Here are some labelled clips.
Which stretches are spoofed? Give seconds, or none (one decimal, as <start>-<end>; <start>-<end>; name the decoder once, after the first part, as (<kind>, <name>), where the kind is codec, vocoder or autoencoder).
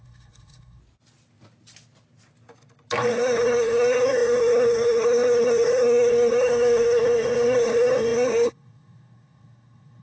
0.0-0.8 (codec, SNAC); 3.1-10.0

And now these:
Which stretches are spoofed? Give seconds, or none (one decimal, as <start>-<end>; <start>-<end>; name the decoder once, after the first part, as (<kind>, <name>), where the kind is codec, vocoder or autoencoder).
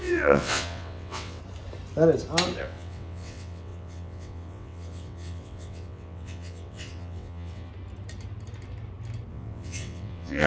0.0-1.4 (vocoder, WaveNeXt); 2.6-7.7; 9.3-10.5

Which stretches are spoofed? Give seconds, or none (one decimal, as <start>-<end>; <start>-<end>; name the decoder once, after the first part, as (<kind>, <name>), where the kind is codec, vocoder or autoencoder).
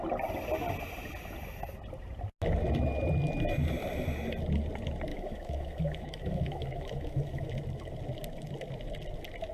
5.1-7.5 (autoencoder, DAC-VAE)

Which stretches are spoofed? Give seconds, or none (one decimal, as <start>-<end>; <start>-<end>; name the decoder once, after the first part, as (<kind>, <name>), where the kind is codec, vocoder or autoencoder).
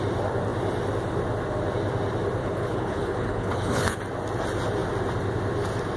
2.4-4.0 (codec, HILCodec)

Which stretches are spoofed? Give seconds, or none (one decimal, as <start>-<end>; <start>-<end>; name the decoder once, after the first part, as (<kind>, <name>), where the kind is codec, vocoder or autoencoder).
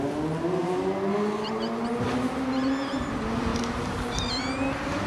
3.5-4.3 (vocoder, BigVGAN v2)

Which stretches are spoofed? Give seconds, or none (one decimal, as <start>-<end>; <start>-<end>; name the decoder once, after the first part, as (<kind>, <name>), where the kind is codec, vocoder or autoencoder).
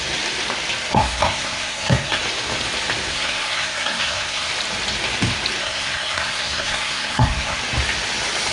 0.9-2.2 (codec, SNAC); 3.1-4.5; 5.6-7.6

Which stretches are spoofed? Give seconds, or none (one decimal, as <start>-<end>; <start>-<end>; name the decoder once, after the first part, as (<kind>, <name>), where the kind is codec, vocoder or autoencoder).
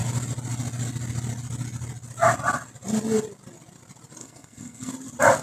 4.2-4.9 (codec, SNAC)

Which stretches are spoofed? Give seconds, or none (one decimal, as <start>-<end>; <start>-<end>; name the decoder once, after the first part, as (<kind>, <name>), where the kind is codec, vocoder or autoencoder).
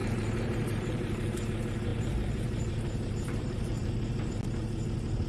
0.0-1.4 (vocoder, BigVGAN v2); 1.9-4.3